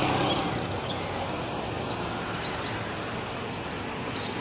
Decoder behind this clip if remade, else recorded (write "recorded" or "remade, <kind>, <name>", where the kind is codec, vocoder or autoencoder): recorded